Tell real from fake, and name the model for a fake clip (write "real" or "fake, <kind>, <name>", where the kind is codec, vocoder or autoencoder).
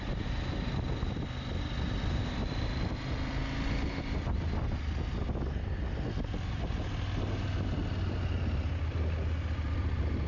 real